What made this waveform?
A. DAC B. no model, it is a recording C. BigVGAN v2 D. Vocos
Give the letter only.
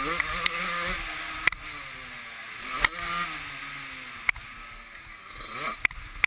B